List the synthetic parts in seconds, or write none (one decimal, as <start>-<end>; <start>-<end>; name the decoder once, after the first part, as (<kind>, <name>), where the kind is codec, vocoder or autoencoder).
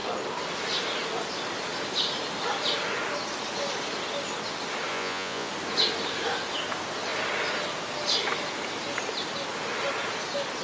4.9-5.5 (vocoder, Vocos)